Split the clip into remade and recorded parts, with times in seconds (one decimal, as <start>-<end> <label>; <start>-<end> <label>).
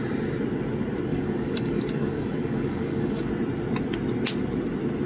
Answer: 0.0-1.1 recorded; 1.1-3.3 remade; 3.3-5.1 recorded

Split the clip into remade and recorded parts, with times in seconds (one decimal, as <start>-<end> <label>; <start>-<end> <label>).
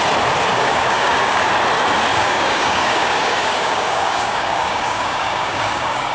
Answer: 0.0-0.5 recorded; 0.5-1.5 remade; 1.5-2.1 recorded; 2.1-6.1 remade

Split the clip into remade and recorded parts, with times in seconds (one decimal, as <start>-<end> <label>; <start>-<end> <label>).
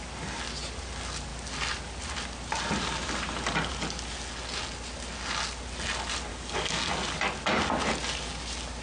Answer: 0.0-6.3 recorded; 6.3-6.9 remade; 6.9-8.8 recorded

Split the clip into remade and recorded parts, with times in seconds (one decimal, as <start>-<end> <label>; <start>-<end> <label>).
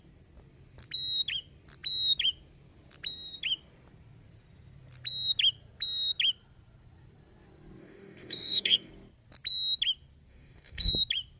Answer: 0.0-7.8 recorded; 7.8-8.9 remade; 8.9-10.3 recorded; 10.3-10.9 remade; 10.9-11.4 recorded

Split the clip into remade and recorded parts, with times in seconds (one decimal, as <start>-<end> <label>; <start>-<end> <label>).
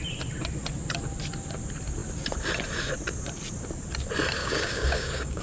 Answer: 0.0-4.4 recorded; 4.4-5.4 remade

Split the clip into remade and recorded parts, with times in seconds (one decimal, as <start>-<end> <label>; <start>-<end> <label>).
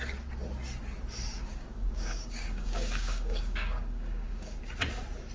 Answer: 0.0-1.4 recorded; 1.4-4.6 remade; 4.6-5.3 recorded